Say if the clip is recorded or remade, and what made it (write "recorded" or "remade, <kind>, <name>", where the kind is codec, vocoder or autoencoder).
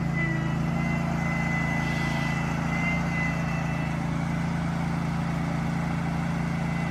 recorded